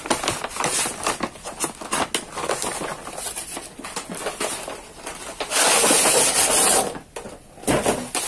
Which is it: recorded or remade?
recorded